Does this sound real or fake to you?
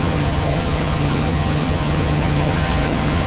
fake